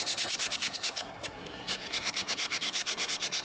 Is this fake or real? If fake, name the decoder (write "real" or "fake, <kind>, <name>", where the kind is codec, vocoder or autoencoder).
fake, codec, SNAC